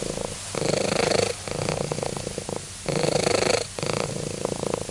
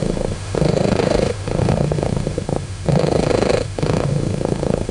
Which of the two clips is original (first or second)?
first